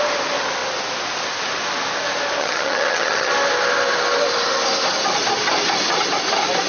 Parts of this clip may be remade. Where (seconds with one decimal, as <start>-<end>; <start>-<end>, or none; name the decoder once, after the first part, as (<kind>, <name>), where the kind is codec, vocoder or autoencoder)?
2.4-3.3 (vocoder, HiFi-GAN)